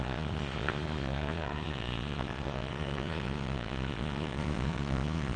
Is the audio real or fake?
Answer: fake